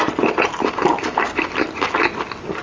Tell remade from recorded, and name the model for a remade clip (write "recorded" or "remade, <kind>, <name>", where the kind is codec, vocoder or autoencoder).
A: recorded